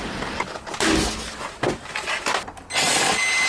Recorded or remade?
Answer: recorded